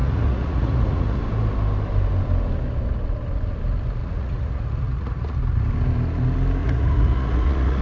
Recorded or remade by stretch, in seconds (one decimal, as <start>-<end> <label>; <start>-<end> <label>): 0.0-1.2 remade; 1.2-4.0 recorded; 4.0-5.4 remade; 5.4-6.6 recorded; 6.6-7.8 remade